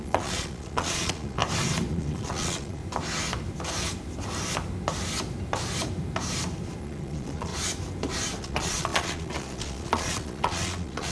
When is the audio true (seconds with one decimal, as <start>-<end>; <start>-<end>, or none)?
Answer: 1.4-1.9; 2.8-6.8; 7.5-8.4